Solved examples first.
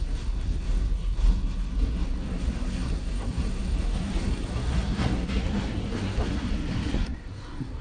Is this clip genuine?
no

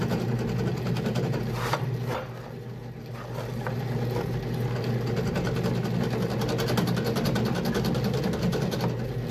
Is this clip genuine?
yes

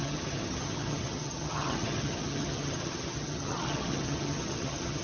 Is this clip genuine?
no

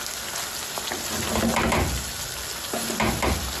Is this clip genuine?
yes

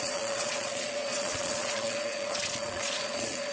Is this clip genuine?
no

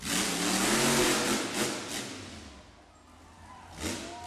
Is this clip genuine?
yes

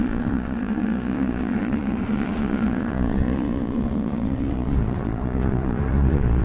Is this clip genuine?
no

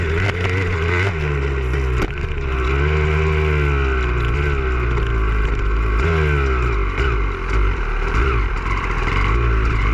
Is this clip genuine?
yes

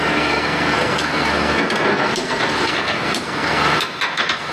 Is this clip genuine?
no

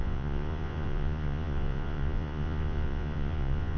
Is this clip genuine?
no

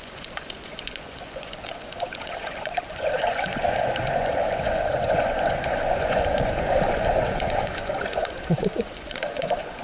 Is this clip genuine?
no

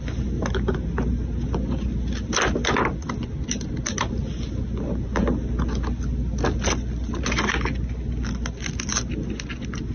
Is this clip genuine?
yes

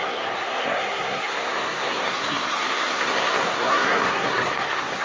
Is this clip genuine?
no